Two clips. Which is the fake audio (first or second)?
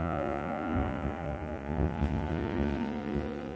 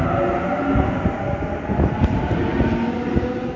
first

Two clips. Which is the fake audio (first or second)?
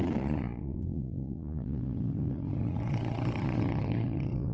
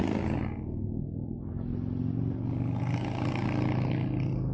first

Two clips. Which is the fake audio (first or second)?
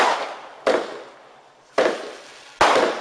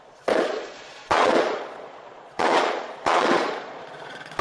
second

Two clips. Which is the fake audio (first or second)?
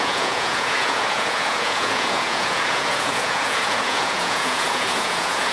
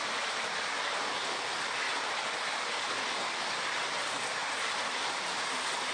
first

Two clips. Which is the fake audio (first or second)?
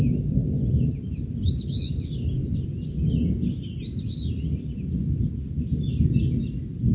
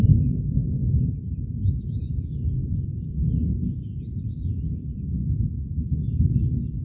second